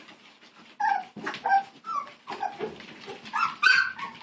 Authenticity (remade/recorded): recorded